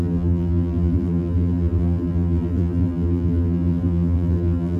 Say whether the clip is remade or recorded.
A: remade